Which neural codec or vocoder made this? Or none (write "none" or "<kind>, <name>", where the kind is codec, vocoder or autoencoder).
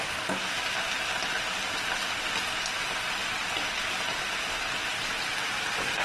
none